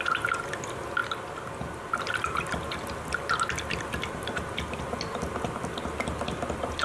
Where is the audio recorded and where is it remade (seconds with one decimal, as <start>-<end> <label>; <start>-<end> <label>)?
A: 0.0-6.8 recorded